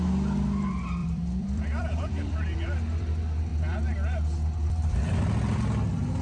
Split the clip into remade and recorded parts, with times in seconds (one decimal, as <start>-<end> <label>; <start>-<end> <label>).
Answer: 0.0-1.0 recorded; 1.0-3.1 remade; 3.1-6.2 recorded